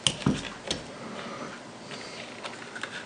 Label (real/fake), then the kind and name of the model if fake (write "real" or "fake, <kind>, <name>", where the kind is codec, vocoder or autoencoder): real